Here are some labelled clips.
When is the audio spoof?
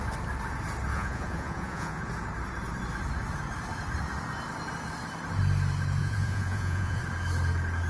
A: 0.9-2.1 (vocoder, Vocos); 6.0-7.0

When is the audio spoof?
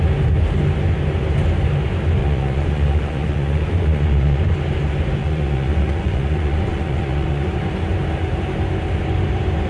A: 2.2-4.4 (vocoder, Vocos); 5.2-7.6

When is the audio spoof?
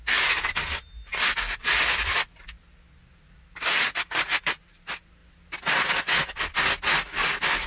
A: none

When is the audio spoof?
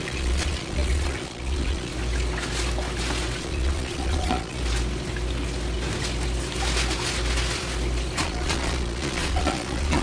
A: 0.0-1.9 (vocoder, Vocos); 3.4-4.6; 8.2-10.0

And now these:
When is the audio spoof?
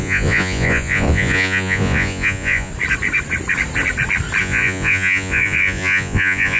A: 0.0-2.7 (vocoder, Vocos); 4.4-6.6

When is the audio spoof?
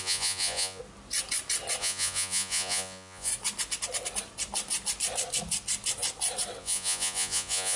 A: 0.0-0.8 (vocoder, Vocos); 1.8-3.3; 6.6-7.8